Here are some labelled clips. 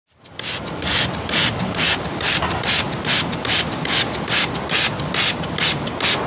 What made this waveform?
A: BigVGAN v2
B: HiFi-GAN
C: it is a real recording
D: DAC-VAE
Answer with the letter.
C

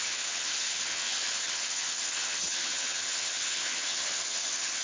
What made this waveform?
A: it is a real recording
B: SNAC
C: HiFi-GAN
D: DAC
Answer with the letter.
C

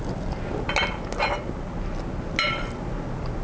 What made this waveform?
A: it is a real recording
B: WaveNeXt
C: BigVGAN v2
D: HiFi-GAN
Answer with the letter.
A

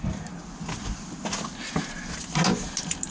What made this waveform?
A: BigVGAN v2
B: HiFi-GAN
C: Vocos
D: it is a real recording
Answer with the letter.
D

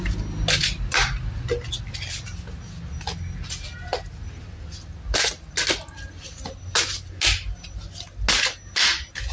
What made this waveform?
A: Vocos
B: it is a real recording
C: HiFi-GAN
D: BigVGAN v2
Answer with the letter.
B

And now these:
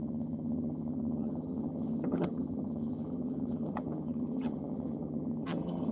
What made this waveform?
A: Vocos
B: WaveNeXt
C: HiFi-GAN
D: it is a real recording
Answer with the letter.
C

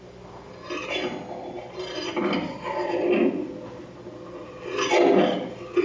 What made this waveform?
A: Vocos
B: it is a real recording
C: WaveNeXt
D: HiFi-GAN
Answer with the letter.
B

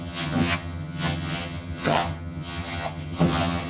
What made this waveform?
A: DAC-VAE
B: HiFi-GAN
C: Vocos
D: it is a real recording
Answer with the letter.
B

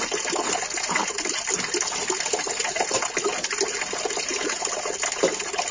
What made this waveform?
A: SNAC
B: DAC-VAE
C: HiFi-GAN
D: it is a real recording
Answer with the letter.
D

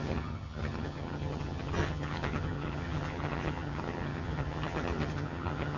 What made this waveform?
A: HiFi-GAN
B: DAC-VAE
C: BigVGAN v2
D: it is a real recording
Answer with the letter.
A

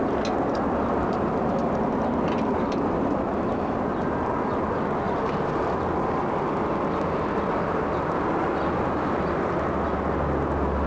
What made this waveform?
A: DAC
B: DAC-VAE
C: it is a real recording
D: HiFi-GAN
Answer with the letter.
C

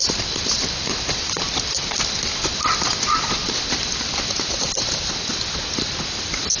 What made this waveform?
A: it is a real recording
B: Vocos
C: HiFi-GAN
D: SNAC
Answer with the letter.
A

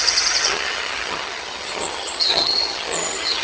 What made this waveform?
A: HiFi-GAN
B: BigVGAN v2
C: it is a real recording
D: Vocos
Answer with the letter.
A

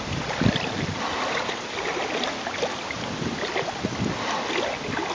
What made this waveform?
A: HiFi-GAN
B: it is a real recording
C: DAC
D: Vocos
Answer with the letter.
B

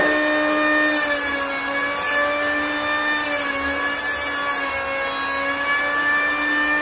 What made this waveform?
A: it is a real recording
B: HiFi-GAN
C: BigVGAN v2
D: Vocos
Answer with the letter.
A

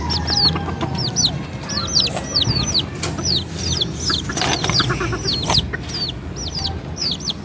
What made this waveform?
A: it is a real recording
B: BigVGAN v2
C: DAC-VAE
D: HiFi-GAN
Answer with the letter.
A